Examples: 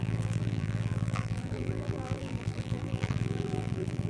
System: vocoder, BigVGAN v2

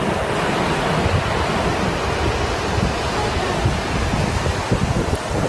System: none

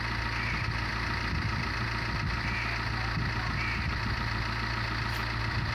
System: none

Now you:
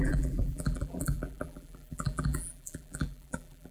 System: vocoder, BigVGAN v2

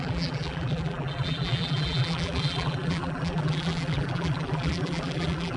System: vocoder, BigVGAN v2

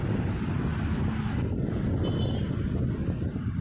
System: none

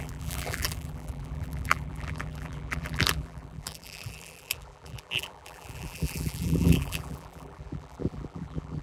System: vocoder, BigVGAN v2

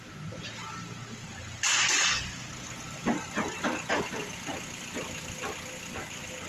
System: none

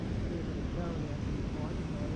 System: none